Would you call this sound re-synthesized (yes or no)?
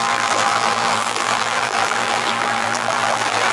yes